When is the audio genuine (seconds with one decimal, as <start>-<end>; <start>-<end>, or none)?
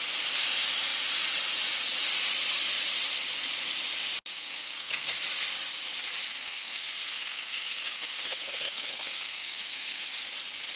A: 0.0-4.3; 5.1-6.4; 10.1-10.8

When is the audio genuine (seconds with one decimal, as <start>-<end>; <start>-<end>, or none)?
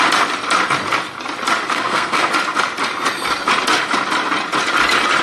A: 0.0-1.7; 2.3-5.2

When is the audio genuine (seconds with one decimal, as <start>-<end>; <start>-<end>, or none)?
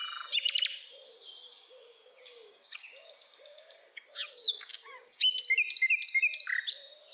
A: 0.0-1.5; 5.3-7.1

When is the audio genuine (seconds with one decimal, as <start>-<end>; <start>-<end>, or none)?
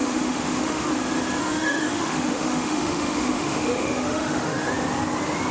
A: 0.9-1.4; 4.7-5.5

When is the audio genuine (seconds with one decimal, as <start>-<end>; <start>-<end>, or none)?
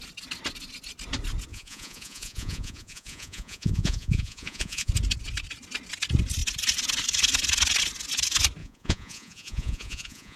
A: 0.0-1.5; 4.9-8.6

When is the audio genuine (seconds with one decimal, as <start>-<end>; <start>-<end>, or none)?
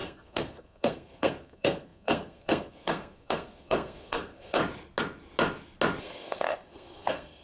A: 4.6-6.0